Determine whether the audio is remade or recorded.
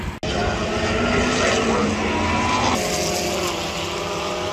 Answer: recorded